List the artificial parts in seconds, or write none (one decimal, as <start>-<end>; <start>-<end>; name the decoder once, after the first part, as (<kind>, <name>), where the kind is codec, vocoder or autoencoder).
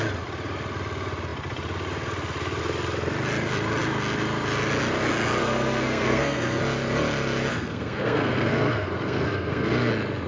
5.4-6.6 (codec, SNAC); 7.5-9.9